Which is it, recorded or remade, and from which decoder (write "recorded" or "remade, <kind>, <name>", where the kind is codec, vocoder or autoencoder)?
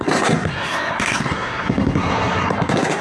remade, codec, SNAC